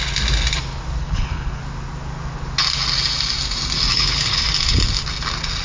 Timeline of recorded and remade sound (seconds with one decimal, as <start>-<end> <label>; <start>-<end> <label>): 0.0-1.0 recorded; 1.0-1.6 remade; 1.6-3.9 recorded; 3.9-4.4 remade; 4.4-5.6 recorded